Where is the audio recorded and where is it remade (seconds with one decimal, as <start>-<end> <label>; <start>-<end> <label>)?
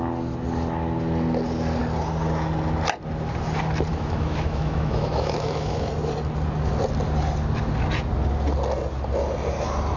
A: 0.0-3.9 recorded; 3.9-5.9 remade; 5.9-10.0 recorded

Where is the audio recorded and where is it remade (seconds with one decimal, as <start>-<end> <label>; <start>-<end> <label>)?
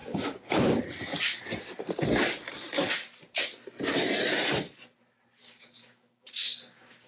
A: 0.0-0.8 remade; 0.8-5.4 recorded; 5.4-7.1 remade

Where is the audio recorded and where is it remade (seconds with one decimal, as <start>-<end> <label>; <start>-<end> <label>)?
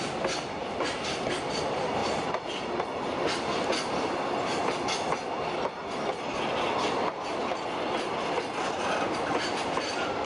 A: 0.0-10.3 recorded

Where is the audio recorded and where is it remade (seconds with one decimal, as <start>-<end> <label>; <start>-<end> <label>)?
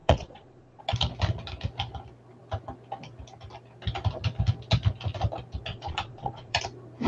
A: 0.0-0.8 remade; 0.8-5.7 recorded; 5.7-6.6 remade; 6.6-7.1 recorded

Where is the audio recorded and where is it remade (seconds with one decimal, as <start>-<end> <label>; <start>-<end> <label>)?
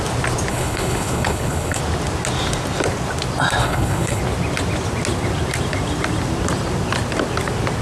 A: 0.0-0.5 recorded; 0.5-1.8 remade; 1.8-3.6 recorded; 3.6-4.2 remade; 4.2-7.8 recorded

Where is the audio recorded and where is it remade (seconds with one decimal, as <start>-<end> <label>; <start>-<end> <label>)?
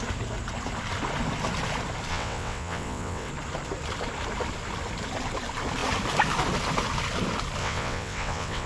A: 0.0-2.1 recorded; 2.1-3.3 remade; 3.3-7.6 recorded; 7.6-8.7 remade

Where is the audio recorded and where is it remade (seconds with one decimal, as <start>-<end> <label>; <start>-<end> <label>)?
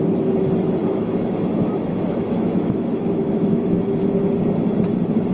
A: 0.0-0.8 recorded; 0.8-4.0 remade; 4.0-5.3 recorded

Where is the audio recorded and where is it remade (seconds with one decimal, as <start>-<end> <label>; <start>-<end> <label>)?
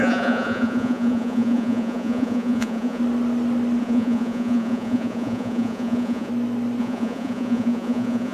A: 0.0-3.0 remade; 3.0-3.8 recorded; 3.8-6.3 remade; 6.3-6.8 recorded; 6.8-8.3 remade